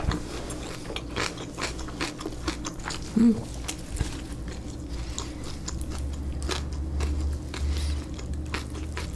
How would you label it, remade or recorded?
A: recorded